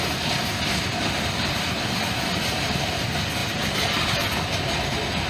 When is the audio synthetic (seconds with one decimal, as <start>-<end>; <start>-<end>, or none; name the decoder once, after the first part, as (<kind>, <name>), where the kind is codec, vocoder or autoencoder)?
none